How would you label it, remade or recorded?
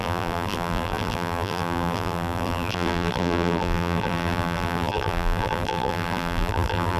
remade